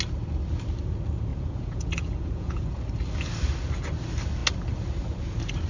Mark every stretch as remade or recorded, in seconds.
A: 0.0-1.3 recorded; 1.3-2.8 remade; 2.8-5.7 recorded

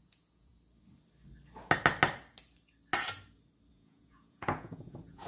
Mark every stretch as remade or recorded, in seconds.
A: 0.0-0.5 remade; 0.5-3.7 recorded; 3.7-5.3 remade

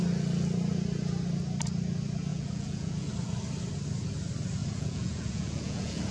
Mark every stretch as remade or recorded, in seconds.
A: 0.0-2.3 recorded; 2.3-3.1 remade; 3.1-4.6 recorded; 4.6-6.1 remade